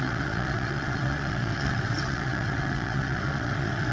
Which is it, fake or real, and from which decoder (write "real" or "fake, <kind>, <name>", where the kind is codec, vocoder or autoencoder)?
fake, vocoder, WaveNeXt